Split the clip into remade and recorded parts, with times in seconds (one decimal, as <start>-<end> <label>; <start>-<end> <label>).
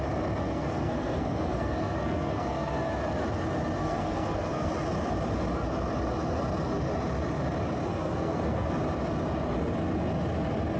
0.0-0.4 recorded; 0.4-2.7 remade; 2.7-3.8 recorded; 3.8-4.7 remade; 4.7-7.9 recorded; 7.9-8.7 remade; 8.7-10.8 recorded